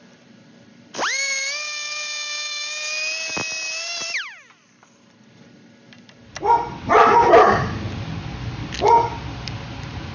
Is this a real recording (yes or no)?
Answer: yes